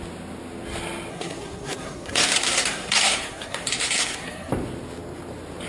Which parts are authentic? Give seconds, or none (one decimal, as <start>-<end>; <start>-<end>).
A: 0.0-1.1; 4.5-5.7